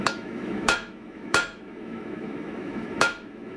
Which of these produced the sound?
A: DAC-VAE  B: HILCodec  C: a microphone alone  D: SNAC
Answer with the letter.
A